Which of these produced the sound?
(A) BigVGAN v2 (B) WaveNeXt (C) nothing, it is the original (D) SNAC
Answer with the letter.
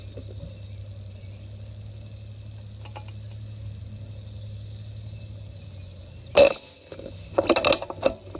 C